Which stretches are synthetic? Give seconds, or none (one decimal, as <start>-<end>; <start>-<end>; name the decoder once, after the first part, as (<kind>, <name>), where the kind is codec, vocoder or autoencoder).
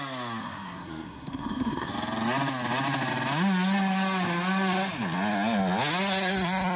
0.4-1.9 (codec, SNAC)